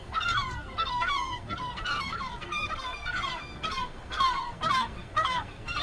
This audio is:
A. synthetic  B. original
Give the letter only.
A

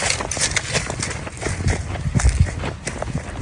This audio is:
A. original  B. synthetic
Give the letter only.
A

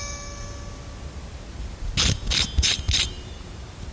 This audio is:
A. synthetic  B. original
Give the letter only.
B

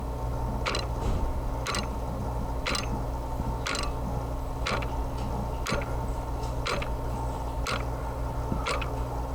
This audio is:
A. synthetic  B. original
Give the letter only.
B